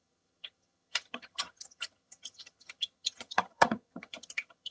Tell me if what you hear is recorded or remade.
remade